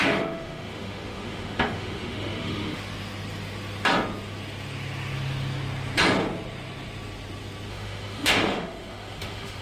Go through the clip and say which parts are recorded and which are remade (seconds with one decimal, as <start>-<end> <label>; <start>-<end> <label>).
0.0-2.8 remade; 2.8-7.7 recorded; 7.7-9.6 remade

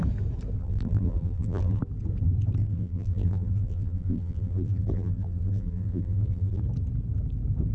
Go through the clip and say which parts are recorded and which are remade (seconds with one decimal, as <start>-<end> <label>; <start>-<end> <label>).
0.0-0.6 recorded; 0.6-1.8 remade; 1.8-2.6 recorded; 2.6-6.6 remade; 6.6-7.7 recorded

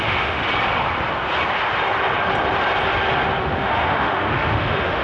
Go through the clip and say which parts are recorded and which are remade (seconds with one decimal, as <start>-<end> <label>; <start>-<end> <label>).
0.0-0.4 remade; 0.4-3.4 recorded; 3.4-5.0 remade

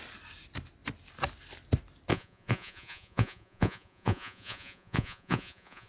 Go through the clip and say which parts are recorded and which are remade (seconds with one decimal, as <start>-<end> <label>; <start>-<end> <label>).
0.0-2.1 recorded; 2.1-5.9 remade